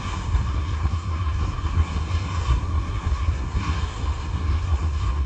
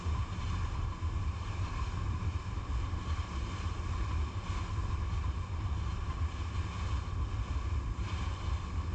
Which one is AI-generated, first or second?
first